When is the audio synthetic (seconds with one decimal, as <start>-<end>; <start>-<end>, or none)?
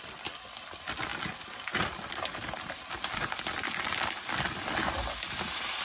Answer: none